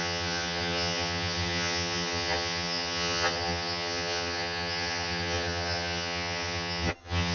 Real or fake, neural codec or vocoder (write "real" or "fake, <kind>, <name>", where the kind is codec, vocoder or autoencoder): fake, vocoder, HiFi-GAN